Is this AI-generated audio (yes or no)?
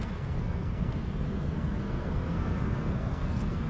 yes